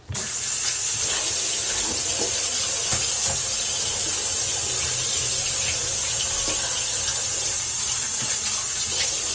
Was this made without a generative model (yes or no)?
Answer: yes